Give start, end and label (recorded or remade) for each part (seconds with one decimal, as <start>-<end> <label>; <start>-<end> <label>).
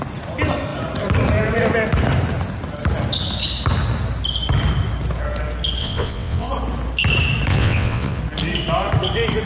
0.0-5.8 recorded; 5.8-6.5 remade; 6.5-7.5 recorded; 7.5-8.2 remade; 8.2-9.5 recorded